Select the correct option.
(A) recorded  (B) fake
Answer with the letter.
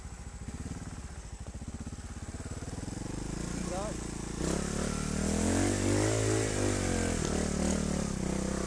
A